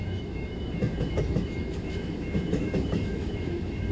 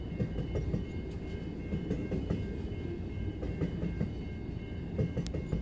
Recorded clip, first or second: second